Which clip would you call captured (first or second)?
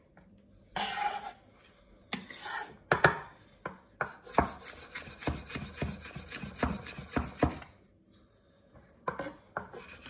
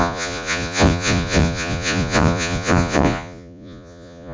first